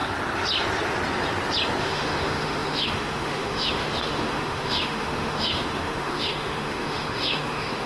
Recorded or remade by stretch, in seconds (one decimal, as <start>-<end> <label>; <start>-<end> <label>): 0.0-1.8 recorded; 1.8-7.9 remade